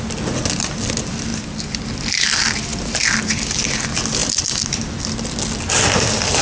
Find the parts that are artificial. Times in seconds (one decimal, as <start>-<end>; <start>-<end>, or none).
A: 2.7-3.2; 4.2-5.0